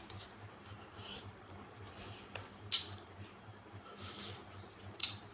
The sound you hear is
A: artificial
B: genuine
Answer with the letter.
A